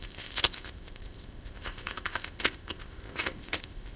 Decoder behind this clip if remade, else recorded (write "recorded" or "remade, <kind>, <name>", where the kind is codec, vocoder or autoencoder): remade, codec, ZipCodec